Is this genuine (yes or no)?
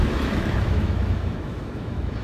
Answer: no